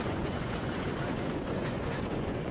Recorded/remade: remade